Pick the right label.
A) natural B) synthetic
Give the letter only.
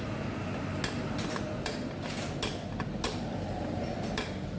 A